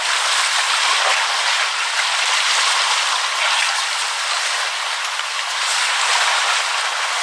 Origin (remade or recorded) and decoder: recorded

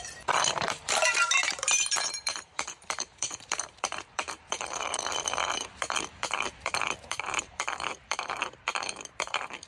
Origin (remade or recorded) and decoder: remade, vocoder, BigVGAN v2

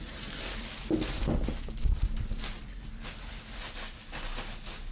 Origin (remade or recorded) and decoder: recorded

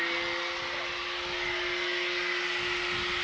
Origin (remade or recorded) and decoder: recorded